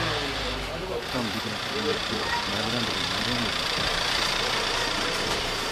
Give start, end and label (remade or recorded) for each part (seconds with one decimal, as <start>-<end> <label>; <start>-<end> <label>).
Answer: 0.0-1.9 recorded; 1.9-5.2 remade; 5.2-5.7 recorded